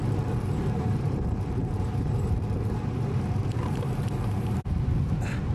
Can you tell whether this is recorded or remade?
remade